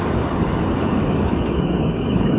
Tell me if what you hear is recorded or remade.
remade